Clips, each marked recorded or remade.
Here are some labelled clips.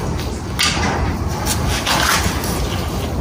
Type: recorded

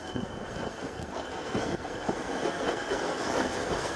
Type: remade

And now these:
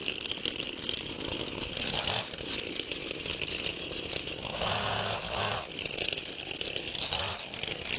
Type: recorded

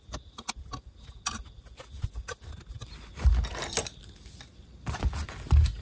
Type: recorded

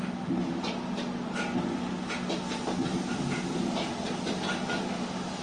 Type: recorded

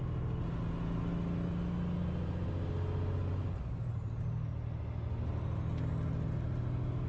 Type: recorded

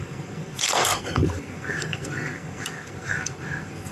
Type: remade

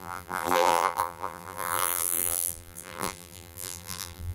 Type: remade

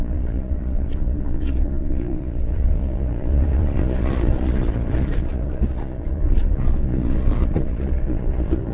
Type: remade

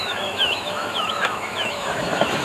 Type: remade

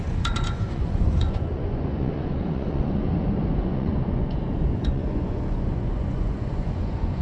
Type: remade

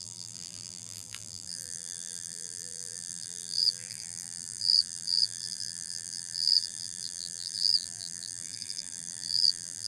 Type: remade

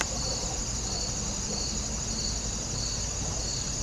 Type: recorded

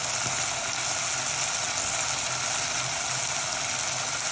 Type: recorded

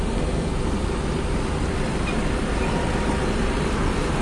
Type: recorded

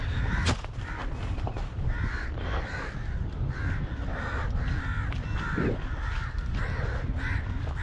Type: recorded